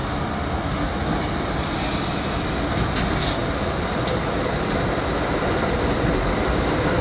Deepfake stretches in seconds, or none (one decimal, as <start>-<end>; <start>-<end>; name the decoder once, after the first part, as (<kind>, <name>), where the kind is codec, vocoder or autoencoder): none